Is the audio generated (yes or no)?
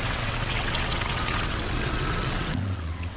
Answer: yes